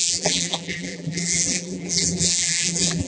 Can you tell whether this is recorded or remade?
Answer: remade